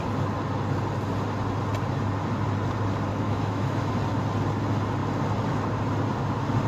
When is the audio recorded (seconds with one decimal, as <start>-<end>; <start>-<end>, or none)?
0.0-3.1; 3.9-6.7